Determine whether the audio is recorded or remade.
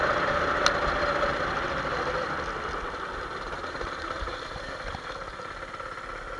recorded